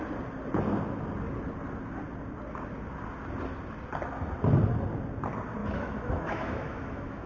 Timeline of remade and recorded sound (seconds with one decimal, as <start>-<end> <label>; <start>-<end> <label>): 0.0-5.6 recorded; 5.6-7.3 remade